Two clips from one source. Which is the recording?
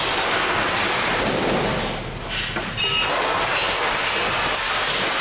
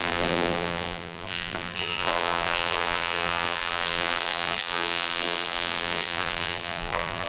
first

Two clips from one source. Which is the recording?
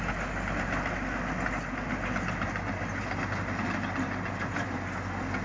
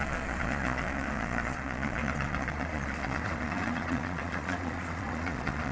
first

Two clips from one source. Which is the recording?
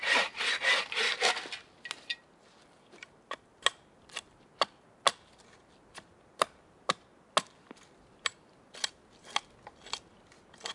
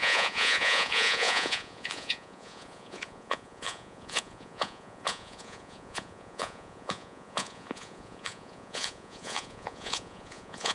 first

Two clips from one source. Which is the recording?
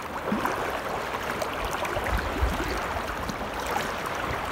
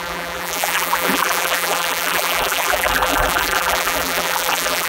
first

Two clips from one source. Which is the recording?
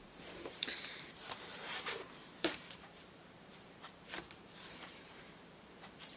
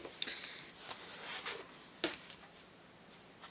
second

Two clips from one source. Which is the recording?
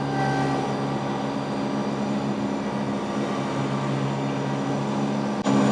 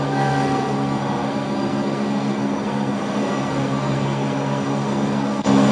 first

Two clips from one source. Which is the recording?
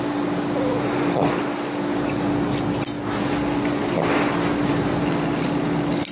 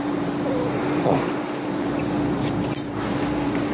first